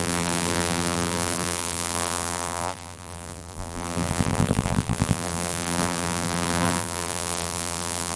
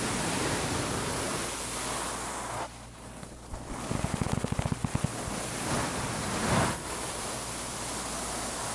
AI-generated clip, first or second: first